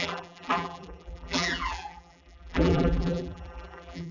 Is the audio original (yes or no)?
no